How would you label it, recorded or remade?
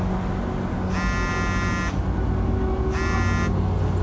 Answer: recorded